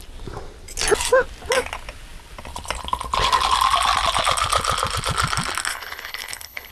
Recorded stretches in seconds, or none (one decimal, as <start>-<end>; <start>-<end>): 0.0-5.7